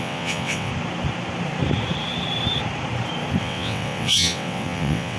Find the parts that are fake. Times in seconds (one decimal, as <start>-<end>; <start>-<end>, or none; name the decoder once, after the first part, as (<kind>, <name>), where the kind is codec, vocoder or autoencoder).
0.0-0.7 (vocoder, WaveNeXt); 3.4-5.2